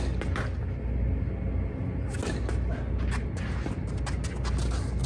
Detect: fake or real real